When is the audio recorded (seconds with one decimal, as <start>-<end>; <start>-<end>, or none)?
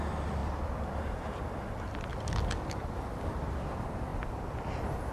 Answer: 0.0-5.1